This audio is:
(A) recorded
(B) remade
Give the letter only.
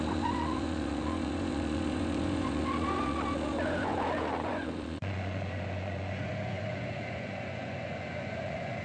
B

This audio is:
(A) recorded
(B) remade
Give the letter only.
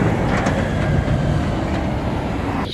A